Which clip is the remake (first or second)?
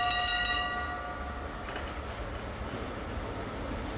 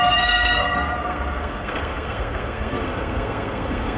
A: second